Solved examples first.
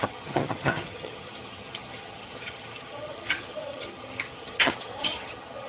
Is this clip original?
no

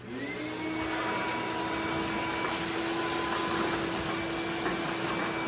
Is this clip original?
yes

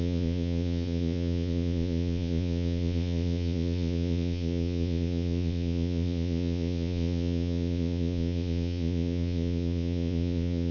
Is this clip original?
no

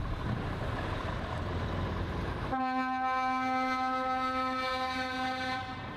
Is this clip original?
no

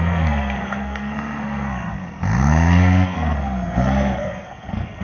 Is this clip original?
no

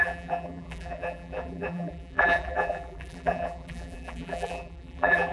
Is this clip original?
no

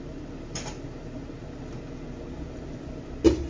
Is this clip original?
yes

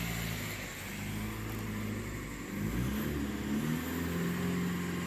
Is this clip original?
yes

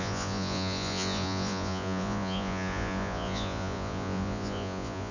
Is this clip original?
no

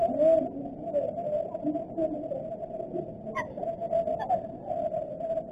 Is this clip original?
yes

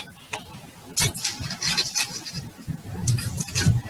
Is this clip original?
yes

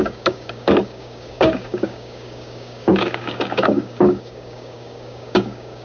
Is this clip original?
no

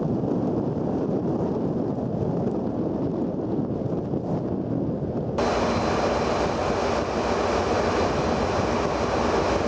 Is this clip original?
yes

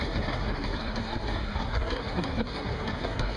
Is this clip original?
no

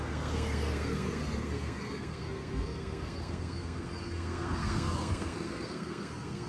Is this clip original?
no